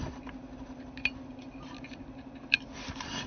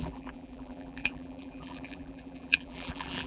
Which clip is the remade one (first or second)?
second